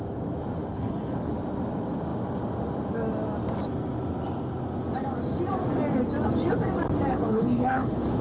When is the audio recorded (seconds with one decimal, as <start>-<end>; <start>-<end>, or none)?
0.0-0.6; 1.3-7.1